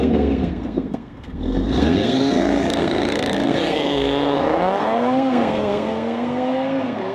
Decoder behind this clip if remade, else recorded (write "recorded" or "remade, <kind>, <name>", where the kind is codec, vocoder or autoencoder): remade, codec, SNAC